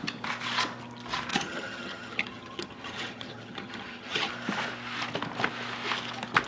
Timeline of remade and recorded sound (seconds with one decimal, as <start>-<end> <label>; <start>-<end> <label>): 0.0-1.3 recorded; 1.3-4.3 remade; 4.3-6.5 recorded